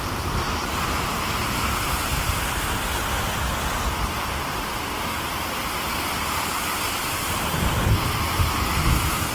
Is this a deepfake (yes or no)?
no